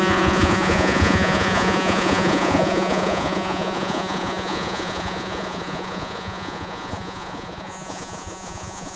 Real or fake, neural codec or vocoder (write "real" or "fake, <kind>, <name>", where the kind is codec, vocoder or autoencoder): fake, vocoder, Vocos